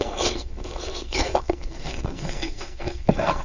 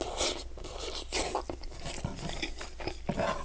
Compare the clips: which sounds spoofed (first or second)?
first